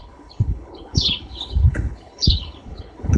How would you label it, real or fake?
fake